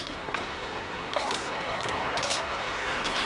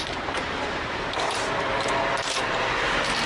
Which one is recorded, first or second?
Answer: second